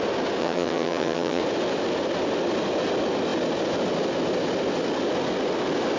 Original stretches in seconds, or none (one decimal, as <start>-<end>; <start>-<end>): 0.0-0.4; 1.4-6.0